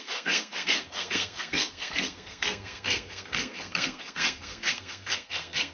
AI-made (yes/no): yes